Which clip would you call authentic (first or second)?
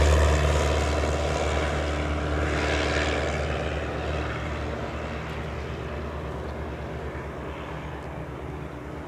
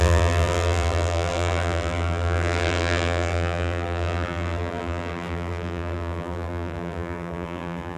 first